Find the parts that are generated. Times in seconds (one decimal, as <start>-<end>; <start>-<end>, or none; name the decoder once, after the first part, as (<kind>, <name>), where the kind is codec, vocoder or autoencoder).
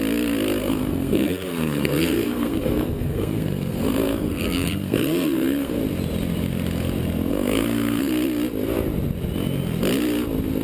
0.6-5.8 (codec, SNAC); 7.3-8.1